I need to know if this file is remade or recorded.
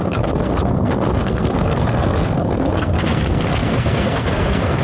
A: remade